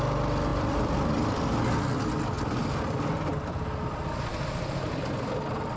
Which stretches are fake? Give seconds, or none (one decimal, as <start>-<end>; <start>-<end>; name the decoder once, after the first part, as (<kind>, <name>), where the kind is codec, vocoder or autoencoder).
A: 0.5-2.0 (vocoder, BigVGAN v2); 3.3-3.8